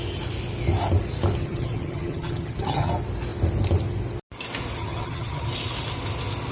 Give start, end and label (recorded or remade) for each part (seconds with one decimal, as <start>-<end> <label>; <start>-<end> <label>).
0.0-1.4 recorded; 1.4-2.9 remade; 2.9-4.8 recorded; 4.8-5.5 remade; 5.5-6.5 recorded